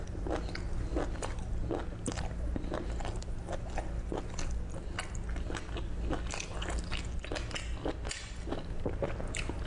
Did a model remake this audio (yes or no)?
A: no